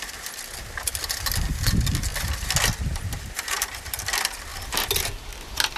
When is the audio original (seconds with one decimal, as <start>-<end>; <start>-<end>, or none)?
0.0-5.8